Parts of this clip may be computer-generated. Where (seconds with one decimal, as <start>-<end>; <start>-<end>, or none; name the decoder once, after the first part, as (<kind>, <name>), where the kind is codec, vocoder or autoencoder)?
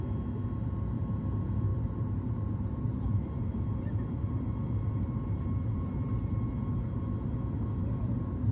1.7-6.5 (vocoder, BigVGAN v2)